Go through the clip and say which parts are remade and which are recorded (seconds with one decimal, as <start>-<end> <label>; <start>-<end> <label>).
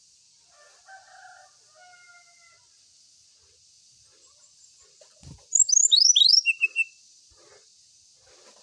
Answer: 0.0-5.8 recorded; 5.8-7.2 remade; 7.2-8.6 recorded